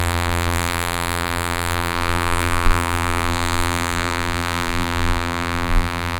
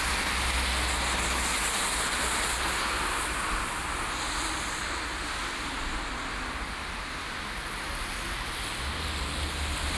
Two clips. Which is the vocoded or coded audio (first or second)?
first